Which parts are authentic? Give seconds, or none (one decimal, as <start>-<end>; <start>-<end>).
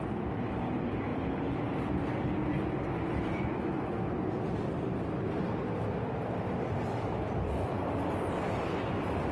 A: none